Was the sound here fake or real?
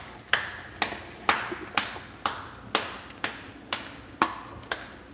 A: real